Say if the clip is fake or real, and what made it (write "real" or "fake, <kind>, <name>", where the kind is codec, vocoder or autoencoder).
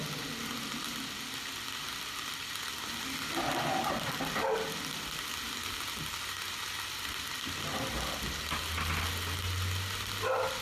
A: real